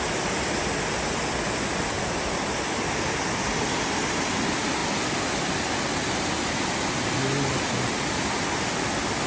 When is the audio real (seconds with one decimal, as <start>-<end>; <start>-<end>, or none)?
0.0-9.3